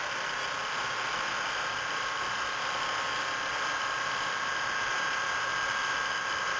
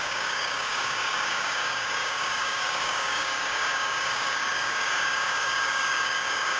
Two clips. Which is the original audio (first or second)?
first